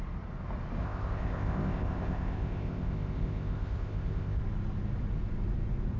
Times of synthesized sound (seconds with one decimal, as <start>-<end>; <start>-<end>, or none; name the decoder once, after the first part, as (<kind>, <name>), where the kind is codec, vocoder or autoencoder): 0.8-4.4 (codec, ZipCodec)